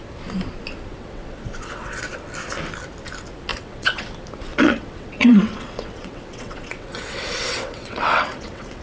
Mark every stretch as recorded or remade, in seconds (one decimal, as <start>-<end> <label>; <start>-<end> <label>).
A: 0.0-0.9 recorded; 0.9-2.1 remade; 2.1-3.5 recorded; 3.5-4.1 remade; 4.1-4.5 recorded; 4.5-8.8 remade